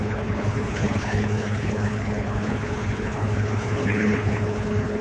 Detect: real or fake fake